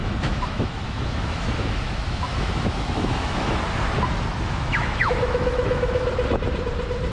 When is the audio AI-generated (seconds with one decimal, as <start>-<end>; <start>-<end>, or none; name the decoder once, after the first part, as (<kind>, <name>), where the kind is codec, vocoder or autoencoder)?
0.0-3.6 (autoencoder, DAC-VAE); 4.3-6.1